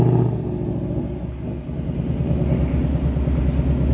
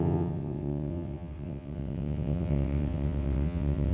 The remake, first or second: second